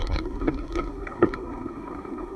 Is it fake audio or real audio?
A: fake